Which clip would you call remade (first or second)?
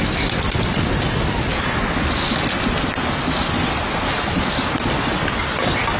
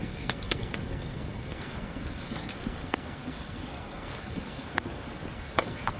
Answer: second